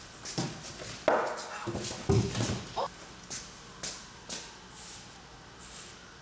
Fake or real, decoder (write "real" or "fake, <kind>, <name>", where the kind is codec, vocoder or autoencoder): real